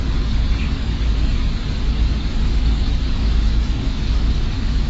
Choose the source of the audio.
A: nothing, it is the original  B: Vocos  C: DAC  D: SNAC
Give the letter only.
C